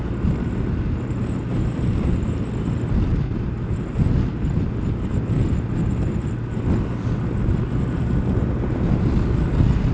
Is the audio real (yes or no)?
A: yes